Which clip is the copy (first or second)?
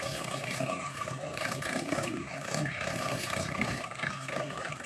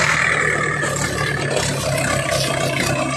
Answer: first